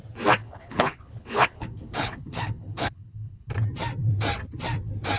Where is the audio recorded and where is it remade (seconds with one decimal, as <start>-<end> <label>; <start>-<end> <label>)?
0.0-0.4 recorded; 0.4-3.5 remade; 3.5-5.2 recorded